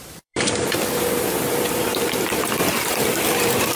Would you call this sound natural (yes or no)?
no